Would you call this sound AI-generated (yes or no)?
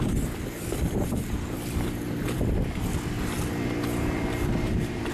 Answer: yes